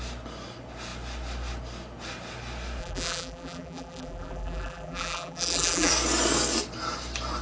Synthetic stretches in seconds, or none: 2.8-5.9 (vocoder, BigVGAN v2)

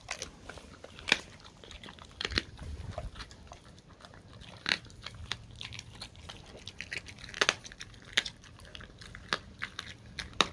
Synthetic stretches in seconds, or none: 0.0-10.5 (vocoder, BigVGAN v2)